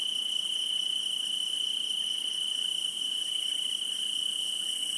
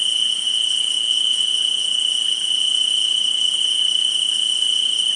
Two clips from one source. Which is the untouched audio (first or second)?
first